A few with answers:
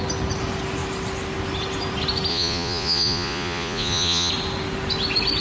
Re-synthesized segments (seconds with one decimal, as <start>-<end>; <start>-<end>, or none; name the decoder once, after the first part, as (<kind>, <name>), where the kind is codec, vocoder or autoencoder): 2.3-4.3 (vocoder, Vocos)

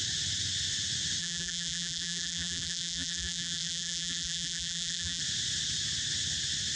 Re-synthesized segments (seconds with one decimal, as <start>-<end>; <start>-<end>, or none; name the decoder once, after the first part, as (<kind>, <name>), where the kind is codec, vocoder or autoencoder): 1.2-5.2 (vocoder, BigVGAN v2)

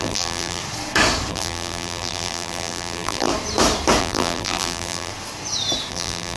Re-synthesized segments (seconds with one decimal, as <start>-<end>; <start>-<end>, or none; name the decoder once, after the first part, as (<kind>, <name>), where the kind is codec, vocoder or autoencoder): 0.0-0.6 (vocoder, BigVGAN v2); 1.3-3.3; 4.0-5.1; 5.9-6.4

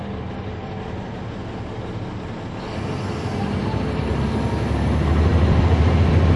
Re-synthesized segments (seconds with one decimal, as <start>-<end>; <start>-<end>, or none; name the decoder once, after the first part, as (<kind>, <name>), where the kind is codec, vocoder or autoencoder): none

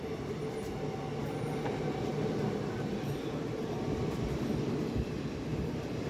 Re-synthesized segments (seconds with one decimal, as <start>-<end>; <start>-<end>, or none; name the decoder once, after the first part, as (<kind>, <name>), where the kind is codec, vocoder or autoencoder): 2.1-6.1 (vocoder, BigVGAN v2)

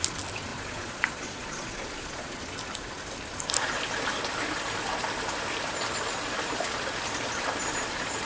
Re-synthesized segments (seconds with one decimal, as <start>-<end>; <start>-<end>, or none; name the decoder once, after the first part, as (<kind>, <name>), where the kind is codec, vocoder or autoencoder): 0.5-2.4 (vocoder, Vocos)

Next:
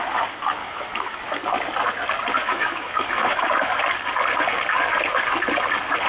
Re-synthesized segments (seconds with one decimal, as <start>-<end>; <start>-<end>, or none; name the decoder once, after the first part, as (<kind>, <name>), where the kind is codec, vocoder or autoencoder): 0.6-1.2 (autoencoder, DAC-VAE); 2.4-3.7

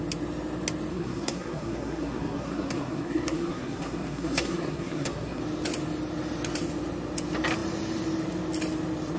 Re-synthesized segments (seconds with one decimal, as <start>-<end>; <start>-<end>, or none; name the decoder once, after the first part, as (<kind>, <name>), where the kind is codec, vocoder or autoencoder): 0.9-5.4 (codec, SNAC)